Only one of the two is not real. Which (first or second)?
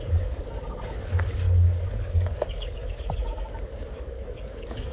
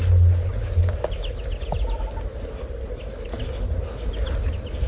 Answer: first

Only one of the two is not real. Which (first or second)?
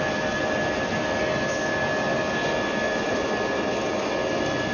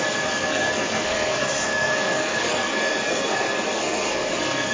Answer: second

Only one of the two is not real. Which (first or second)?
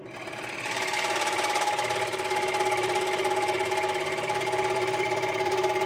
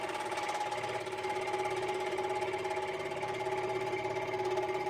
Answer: first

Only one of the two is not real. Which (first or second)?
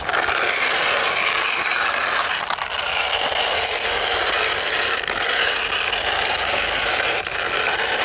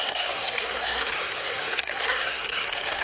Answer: second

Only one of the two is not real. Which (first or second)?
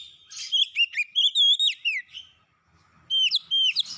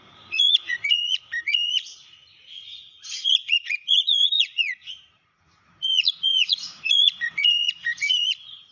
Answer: second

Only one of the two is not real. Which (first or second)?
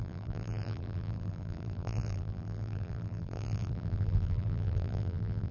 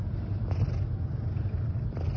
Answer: first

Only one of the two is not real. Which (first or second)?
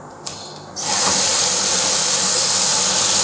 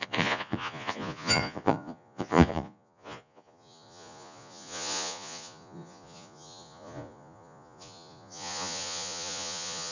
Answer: second